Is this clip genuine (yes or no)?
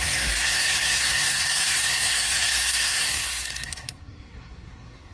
no